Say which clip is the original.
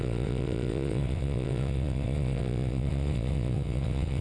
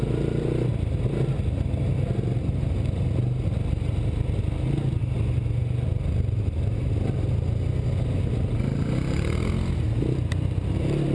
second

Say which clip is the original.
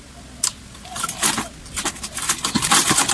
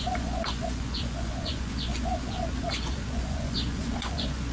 first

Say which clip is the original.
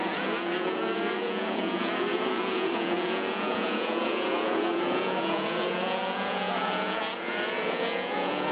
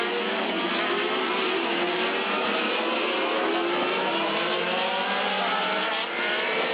second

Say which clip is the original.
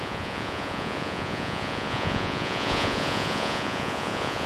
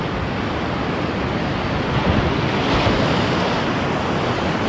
second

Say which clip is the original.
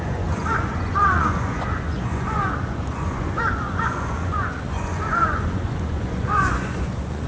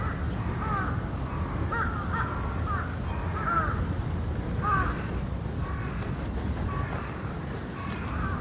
second